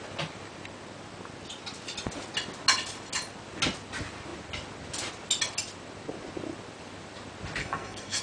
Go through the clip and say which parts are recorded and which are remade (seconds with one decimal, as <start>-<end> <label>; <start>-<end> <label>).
0.0-7.6 recorded; 7.6-8.2 remade